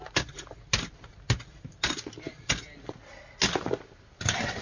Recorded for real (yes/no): yes